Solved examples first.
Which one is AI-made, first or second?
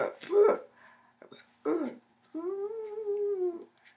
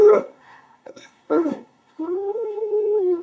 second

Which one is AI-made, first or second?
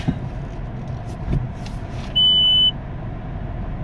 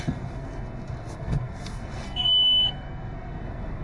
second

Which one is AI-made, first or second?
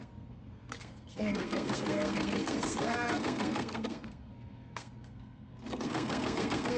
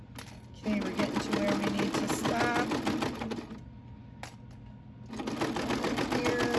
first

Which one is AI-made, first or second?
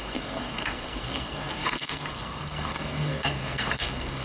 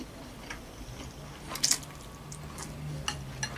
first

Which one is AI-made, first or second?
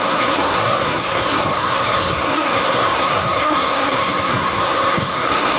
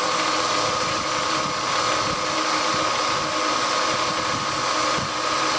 first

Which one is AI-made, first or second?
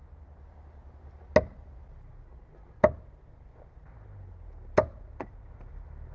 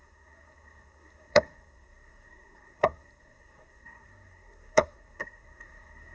second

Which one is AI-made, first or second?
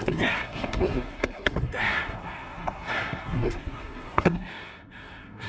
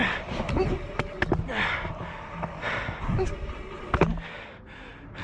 first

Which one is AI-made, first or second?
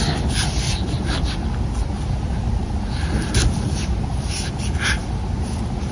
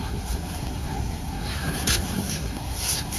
second